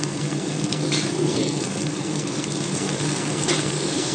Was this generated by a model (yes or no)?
yes